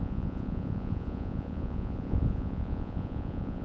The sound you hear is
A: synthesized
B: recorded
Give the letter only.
A